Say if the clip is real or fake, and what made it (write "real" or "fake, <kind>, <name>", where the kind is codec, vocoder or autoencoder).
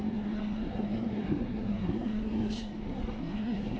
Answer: fake, codec, SNAC